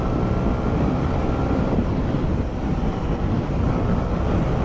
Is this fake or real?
real